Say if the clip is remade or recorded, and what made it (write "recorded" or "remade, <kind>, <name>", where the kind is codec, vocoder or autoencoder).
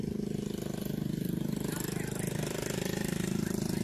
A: recorded